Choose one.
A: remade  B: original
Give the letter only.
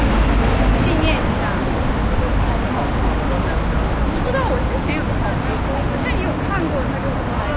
B